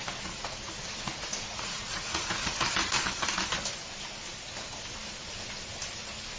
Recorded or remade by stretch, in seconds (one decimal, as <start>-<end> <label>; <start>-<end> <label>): 0.0-1.3 recorded; 1.3-2.6 remade; 2.6-6.4 recorded